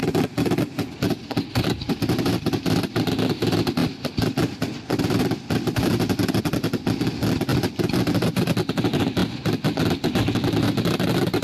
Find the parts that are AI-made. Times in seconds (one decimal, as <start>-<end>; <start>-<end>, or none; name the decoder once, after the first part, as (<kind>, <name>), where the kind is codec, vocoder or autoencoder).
0.0-2.9 (vocoder, BigVGAN v2); 3.8-6.4